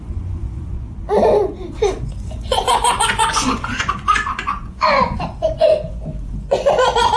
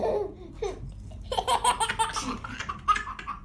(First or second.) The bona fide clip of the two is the second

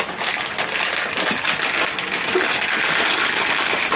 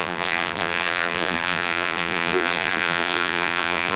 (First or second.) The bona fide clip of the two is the first